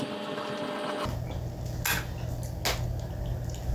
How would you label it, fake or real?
real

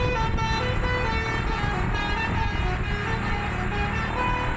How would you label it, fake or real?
real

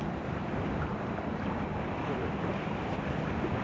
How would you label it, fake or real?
real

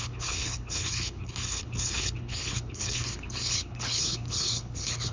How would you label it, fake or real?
fake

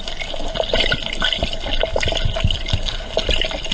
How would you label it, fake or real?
real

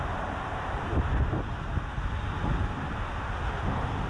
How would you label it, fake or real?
real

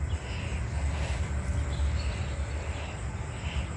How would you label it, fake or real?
real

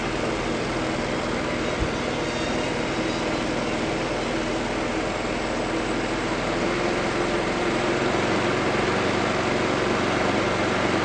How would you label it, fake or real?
real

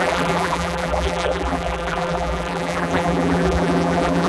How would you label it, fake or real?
fake